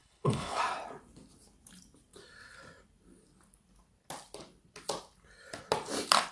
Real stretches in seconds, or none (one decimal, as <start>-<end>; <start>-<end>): 0.6-6.3